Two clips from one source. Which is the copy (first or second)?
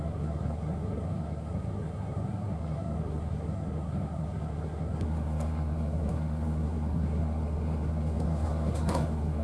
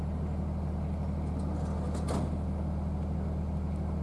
first